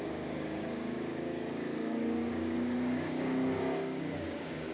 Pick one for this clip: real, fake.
fake